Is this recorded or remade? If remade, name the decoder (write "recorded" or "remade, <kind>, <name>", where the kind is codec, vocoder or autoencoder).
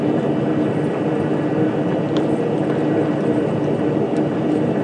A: recorded